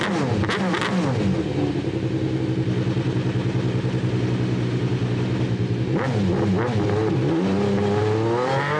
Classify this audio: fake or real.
real